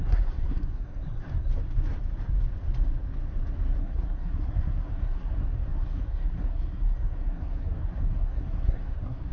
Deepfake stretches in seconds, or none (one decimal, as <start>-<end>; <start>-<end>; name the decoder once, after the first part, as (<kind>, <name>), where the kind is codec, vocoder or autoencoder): 0.0-1.5 (codec, SNAC); 3.8-9.3